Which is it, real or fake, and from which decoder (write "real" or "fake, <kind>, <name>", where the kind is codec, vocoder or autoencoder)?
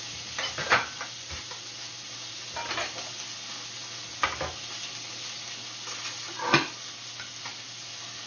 real